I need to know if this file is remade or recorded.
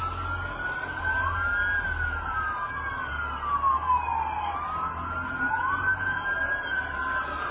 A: recorded